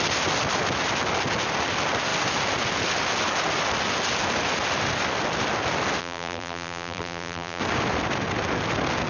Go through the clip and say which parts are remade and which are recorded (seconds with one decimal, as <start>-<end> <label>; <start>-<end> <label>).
0.0-6.0 recorded; 6.0-7.6 remade; 7.6-9.1 recorded